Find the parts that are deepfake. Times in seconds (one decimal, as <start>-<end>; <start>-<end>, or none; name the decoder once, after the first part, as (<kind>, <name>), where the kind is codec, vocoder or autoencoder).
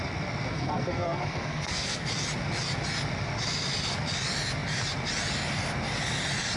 0.5-2.1 (codec, SNAC)